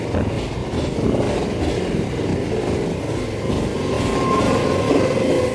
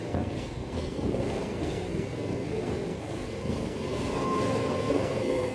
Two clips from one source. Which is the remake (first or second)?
second